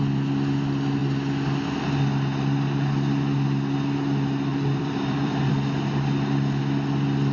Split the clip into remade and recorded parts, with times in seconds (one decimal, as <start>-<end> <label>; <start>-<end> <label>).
0.0-4.5 recorded; 4.5-5.5 remade; 5.5-7.3 recorded